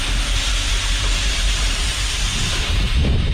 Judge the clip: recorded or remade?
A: remade